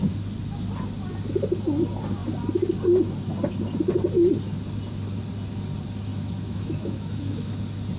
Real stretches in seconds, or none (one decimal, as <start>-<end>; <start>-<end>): 0.0-6.1; 7.6-8.0